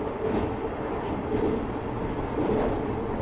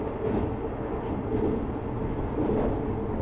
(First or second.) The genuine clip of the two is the second